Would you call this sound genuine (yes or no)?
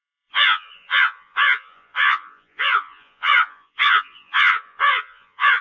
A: no